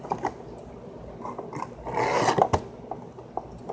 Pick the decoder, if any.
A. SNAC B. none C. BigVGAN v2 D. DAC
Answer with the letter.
B